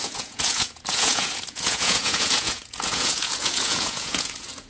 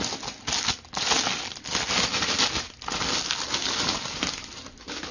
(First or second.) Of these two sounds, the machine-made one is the first